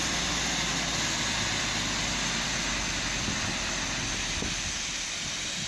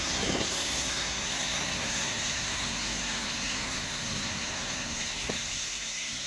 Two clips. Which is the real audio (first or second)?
first